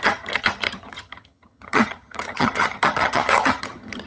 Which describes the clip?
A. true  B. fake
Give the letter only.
B